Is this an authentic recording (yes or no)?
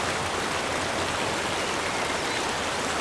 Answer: yes